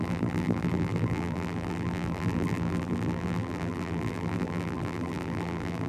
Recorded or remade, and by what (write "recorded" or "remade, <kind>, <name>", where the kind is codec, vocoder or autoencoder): remade, vocoder, BigVGAN v2